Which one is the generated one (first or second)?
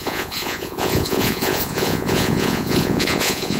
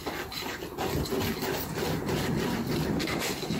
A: first